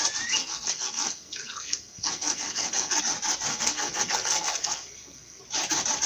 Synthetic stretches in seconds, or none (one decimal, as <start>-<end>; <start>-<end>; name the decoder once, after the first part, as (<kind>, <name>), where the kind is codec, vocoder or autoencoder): 0.4-3.0 (codec, SNAC); 3.5-5.4